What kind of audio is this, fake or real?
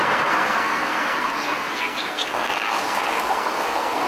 fake